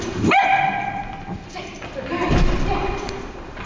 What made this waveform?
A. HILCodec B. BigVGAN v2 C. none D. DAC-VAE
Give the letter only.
B